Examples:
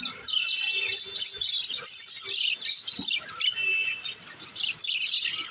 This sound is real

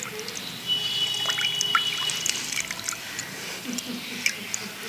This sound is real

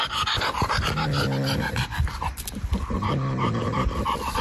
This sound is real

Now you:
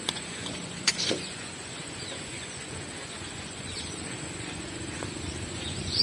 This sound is fake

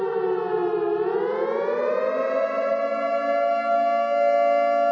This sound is real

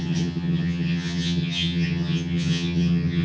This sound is fake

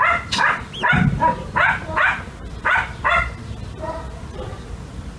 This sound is real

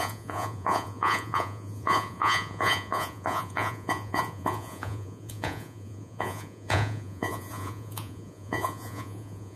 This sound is fake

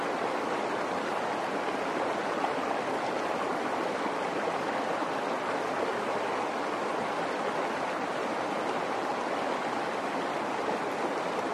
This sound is real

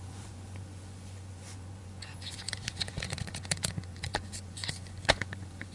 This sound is fake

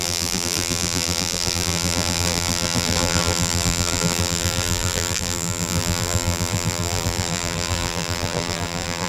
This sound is fake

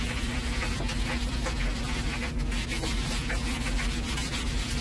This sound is real